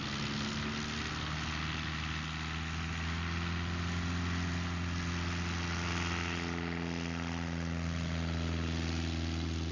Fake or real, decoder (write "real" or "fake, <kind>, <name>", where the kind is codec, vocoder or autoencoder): real